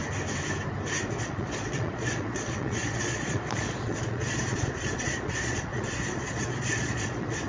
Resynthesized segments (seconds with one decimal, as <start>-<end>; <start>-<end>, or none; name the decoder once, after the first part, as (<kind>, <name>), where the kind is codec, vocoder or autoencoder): 1.1-7.5 (vocoder, Vocos)